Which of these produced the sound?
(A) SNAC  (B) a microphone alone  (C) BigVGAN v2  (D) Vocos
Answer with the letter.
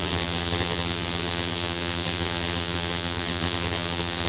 C